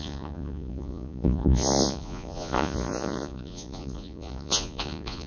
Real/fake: fake